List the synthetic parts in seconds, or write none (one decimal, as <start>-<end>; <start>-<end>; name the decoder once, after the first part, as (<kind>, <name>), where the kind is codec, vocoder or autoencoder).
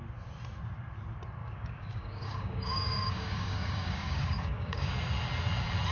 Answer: 1.4-4.9 (codec, DAC)